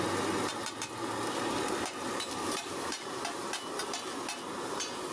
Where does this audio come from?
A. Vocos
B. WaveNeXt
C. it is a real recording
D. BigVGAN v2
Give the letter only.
C